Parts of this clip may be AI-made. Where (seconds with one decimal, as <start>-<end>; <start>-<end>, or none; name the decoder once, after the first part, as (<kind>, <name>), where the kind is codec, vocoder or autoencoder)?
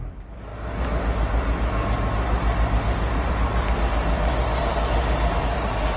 none